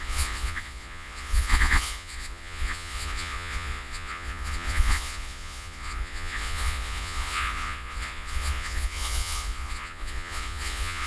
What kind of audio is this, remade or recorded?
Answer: remade